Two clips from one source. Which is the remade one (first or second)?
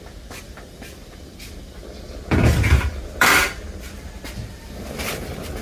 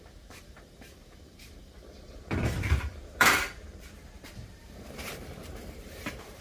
second